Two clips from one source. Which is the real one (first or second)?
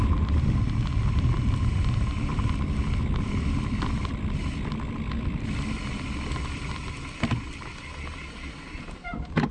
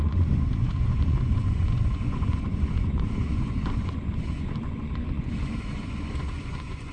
first